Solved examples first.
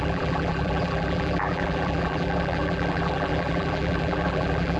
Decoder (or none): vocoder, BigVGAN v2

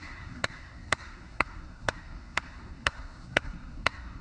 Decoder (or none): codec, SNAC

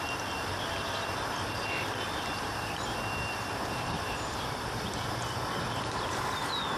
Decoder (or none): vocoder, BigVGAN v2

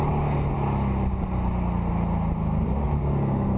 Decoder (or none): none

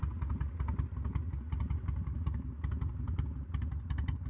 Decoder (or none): none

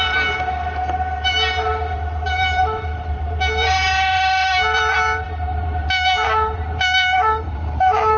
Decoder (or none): vocoder, BigVGAN v2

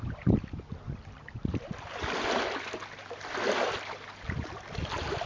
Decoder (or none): none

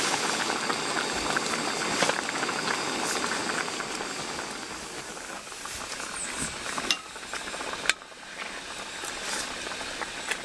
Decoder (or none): none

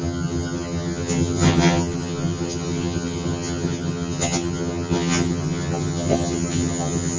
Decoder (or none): vocoder, HiFi-GAN